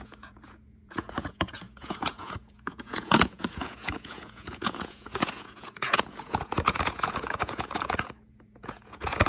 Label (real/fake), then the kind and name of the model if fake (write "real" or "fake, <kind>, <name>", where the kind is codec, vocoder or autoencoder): fake, vocoder, Vocos